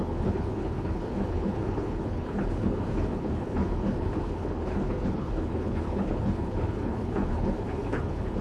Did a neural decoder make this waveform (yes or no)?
yes